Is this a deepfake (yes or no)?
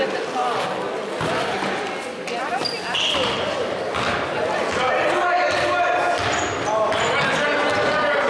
no